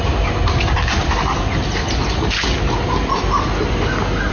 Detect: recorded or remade recorded